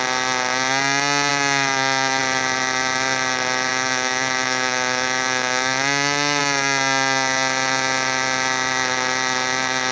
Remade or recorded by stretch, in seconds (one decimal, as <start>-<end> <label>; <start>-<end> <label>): 0.0-1.3 recorded; 1.3-2.2 remade; 2.2-3.7 recorded; 3.7-6.4 remade; 6.4-9.9 recorded